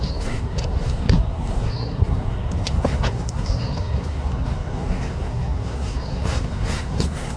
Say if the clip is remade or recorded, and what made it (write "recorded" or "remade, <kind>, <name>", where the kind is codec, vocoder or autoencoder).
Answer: remade, codec, SNAC